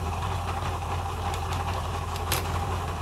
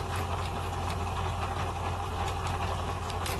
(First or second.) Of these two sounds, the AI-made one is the first